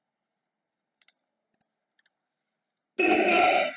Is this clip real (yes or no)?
yes